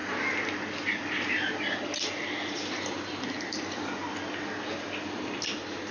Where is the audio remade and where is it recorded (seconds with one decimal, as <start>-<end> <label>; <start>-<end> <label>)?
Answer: 0.0-5.9 recorded